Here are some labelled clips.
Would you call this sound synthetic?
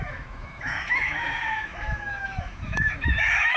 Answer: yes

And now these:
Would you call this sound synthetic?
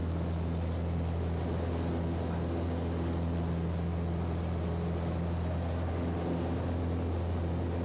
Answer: no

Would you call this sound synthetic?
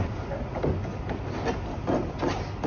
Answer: no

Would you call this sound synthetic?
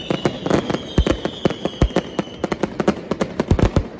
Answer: no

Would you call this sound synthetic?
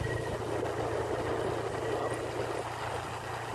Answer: no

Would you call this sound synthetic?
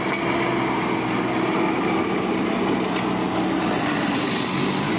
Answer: no